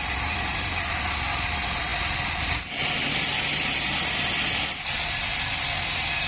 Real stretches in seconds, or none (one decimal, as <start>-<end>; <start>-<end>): 0.0-6.3